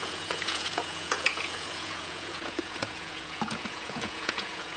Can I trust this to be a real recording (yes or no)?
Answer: no